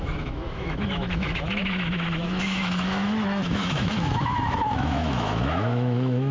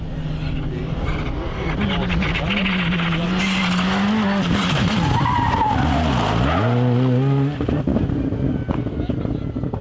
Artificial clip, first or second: first